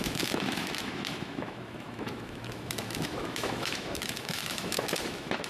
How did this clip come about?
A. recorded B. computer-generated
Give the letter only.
B